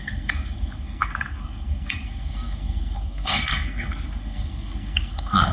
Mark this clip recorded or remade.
remade